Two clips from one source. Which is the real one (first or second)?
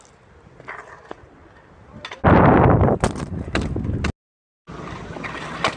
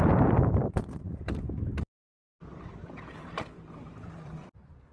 first